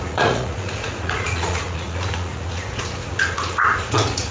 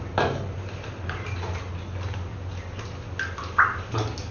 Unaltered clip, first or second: second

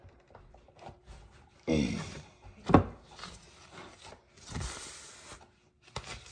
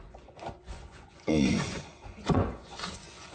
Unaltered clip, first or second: first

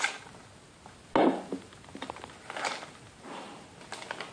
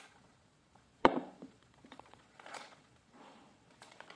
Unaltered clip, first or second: first